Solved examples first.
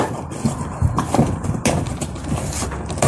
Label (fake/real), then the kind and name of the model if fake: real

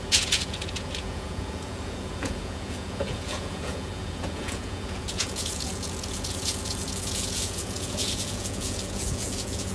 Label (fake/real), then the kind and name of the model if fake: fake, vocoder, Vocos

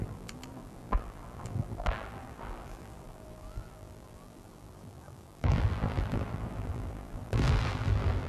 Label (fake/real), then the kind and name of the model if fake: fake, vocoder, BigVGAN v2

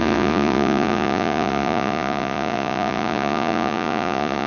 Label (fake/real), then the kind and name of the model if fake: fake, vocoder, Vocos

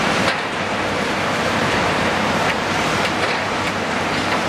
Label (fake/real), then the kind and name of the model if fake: fake, vocoder, BigVGAN v2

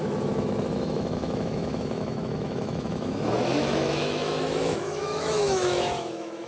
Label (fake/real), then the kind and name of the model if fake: fake, autoencoder, DAC-VAE